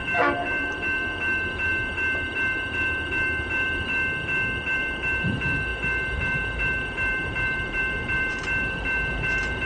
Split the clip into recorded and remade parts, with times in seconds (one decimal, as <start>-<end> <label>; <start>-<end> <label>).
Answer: 0.0-3.9 remade; 3.9-4.7 recorded; 4.7-9.7 remade